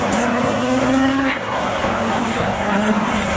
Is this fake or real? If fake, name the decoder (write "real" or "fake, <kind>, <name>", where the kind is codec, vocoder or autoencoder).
fake, codec, SNAC